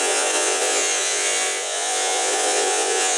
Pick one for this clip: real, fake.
fake